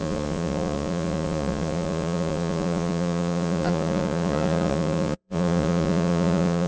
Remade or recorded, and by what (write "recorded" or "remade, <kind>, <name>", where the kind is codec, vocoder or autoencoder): remade, vocoder, Vocos